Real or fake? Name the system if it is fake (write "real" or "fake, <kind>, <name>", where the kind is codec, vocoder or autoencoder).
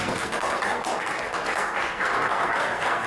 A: fake, codec, SNAC